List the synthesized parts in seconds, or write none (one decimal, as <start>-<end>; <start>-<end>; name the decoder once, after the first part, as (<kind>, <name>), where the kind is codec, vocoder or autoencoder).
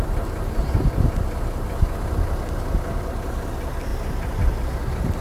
none